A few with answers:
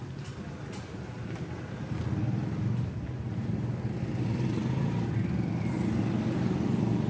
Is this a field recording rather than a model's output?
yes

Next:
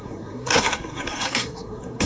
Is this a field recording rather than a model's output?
no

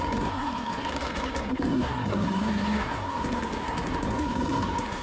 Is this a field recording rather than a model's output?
no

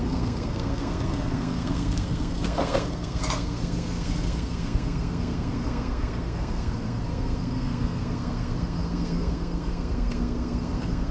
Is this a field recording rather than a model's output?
no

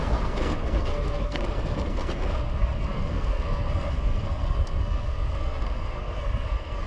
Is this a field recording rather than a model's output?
no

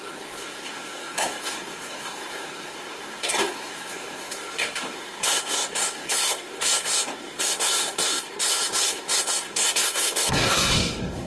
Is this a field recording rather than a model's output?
no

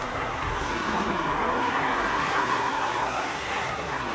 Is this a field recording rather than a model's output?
no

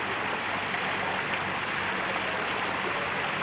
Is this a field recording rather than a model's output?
yes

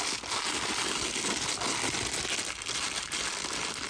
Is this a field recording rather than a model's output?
yes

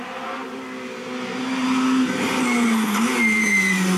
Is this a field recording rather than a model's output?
yes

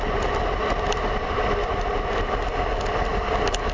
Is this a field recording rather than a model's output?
yes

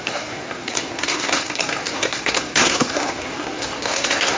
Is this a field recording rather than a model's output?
no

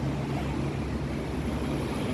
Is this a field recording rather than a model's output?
yes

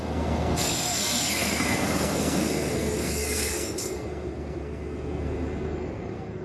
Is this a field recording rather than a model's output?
no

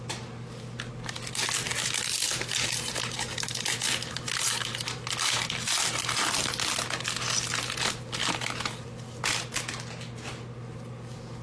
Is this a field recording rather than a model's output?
yes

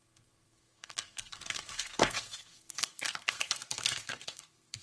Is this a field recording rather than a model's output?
no